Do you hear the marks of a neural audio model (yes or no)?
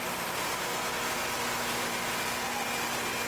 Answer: no